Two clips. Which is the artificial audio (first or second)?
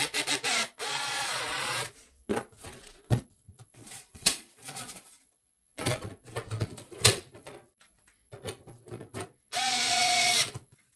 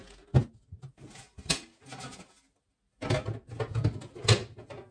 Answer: first